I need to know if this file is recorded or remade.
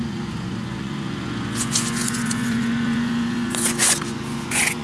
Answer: remade